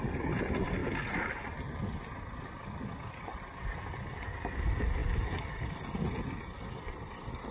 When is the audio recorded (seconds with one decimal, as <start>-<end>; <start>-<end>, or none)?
0.0-7.5